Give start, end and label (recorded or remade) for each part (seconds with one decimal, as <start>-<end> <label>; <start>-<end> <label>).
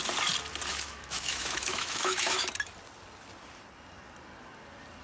0.0-0.7 recorded; 0.7-2.5 remade; 2.5-5.0 recorded